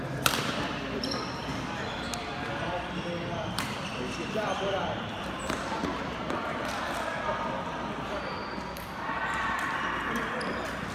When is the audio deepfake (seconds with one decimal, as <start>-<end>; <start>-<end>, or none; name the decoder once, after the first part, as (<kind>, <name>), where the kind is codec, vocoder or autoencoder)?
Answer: 0.0-1.5 (vocoder, BigVGAN v2); 2.2-10.9